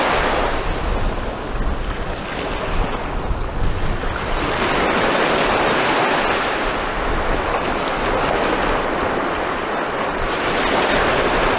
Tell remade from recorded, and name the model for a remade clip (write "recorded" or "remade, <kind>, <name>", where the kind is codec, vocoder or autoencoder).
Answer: recorded